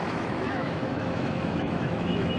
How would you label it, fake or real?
fake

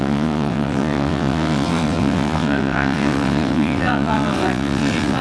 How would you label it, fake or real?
fake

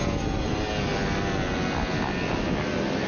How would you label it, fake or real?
real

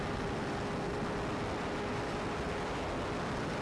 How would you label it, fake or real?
real